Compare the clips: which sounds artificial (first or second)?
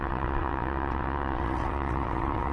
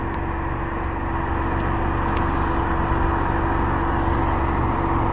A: first